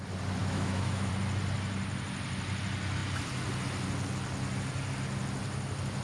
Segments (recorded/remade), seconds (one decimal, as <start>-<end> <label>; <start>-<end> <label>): 0.0-0.4 recorded; 0.4-1.1 remade; 1.1-6.0 recorded